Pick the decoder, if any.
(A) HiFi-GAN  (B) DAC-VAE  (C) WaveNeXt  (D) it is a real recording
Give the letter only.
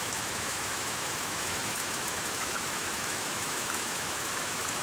B